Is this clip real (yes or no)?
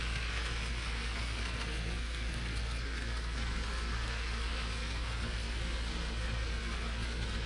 no